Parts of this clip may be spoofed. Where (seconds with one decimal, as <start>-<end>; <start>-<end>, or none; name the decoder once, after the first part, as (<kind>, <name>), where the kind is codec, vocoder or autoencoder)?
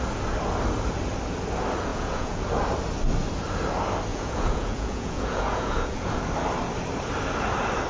1.9-2.4 (vocoder, Vocos); 4.1-6.2